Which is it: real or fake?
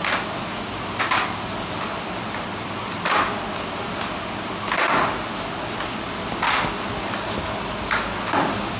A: real